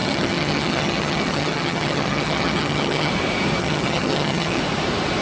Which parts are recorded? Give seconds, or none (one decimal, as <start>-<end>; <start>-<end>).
3.1-3.6; 4.6-5.2